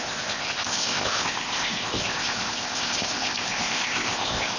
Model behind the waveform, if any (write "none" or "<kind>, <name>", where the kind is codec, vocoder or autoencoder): codec, ZipCodec